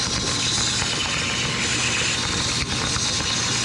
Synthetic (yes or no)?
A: no